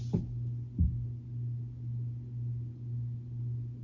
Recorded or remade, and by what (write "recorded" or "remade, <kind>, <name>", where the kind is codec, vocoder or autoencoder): recorded